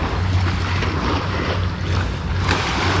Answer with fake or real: real